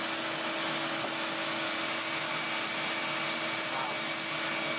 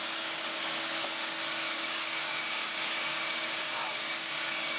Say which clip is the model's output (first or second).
second